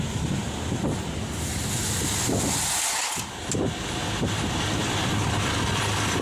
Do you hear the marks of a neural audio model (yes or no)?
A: no